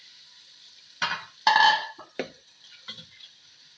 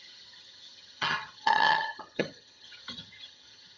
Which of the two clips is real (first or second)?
first